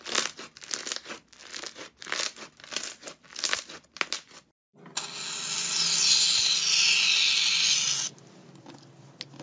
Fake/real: real